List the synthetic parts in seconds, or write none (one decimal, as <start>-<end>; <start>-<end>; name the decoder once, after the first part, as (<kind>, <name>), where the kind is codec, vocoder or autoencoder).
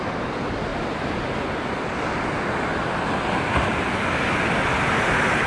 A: none